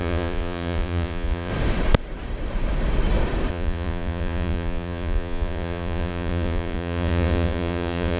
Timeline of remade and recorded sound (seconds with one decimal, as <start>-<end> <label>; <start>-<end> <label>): 0.0-1.5 remade; 1.5-3.5 recorded; 3.5-8.2 remade